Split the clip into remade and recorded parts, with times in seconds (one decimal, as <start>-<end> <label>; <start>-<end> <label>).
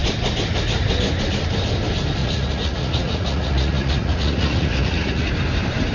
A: 0.0-2.2 recorded; 2.2-5.3 remade; 5.3-5.9 recorded